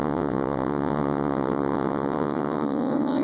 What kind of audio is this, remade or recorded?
remade